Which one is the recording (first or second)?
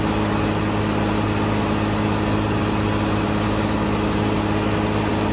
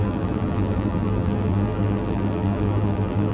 first